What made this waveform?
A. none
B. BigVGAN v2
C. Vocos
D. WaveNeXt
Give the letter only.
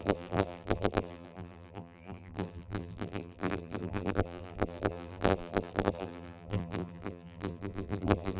B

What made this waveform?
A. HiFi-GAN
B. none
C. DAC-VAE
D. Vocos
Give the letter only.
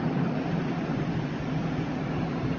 B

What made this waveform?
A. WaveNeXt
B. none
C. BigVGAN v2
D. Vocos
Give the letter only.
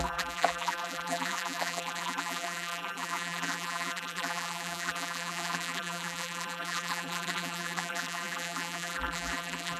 C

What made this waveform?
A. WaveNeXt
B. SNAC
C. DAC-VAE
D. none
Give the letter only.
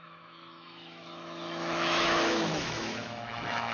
C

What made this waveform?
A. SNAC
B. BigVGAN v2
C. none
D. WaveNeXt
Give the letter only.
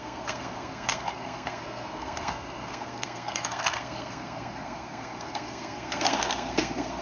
A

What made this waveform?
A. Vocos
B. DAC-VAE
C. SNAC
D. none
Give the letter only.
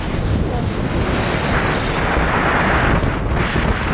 D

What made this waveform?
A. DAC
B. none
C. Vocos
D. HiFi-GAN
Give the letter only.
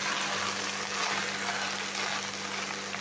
B